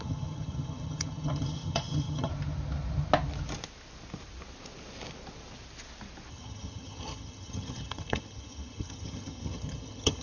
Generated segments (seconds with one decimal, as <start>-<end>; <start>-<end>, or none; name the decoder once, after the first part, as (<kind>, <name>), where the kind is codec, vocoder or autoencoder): 0.0-2.3 (vocoder, HiFi-GAN); 6.3-10.2